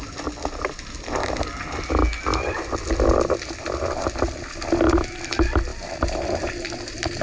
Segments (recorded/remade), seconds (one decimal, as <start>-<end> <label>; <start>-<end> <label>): 0.0-5.7 recorded; 5.7-6.5 remade; 6.5-7.2 recorded